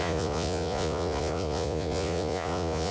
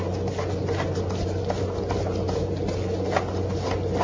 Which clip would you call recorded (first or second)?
second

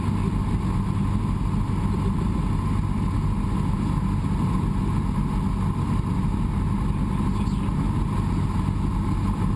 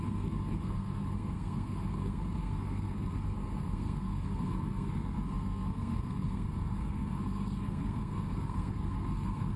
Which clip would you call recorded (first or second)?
first